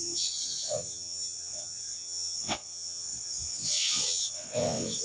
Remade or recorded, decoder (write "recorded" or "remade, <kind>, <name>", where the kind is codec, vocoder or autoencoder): remade, vocoder, WaveNeXt